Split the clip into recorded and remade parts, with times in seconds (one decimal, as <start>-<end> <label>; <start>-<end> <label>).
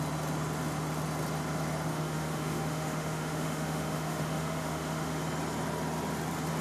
0.0-1.9 recorded; 1.9-5.2 remade; 5.2-6.6 recorded